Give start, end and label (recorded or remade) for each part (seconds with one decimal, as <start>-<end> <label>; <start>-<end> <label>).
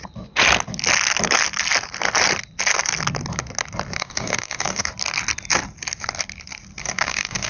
0.0-3.9 recorded; 3.9-4.9 remade; 4.9-6.8 recorded; 6.8-7.5 remade